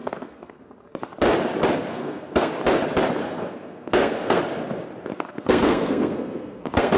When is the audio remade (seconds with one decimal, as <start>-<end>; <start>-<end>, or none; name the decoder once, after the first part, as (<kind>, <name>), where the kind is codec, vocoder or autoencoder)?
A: 0.0-0.6 (codec, SNAC); 1.9-2.5; 3.2-4.4; 5.1-7.0

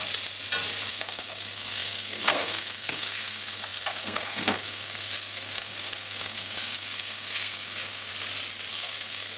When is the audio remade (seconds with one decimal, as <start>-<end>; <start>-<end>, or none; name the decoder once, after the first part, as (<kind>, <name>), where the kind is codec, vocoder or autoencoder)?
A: 0.9-8.1 (codec, SNAC); 8.7-9.4

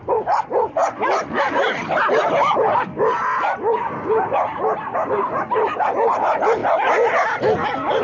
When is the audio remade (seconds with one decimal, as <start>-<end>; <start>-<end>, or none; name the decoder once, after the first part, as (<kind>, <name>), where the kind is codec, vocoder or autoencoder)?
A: none

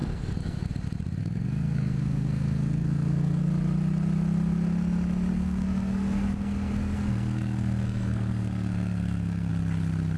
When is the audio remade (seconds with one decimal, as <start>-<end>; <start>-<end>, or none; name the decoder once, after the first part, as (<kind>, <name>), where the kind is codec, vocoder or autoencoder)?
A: 0.0-0.7 (codec, SNAC); 1.2-3.5; 5.3-9.5

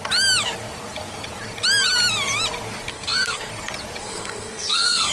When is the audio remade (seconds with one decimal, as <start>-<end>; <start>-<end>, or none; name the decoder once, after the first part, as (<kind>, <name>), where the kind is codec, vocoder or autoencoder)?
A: 2.9-3.5 (codec, SNAC); 4.0-5.1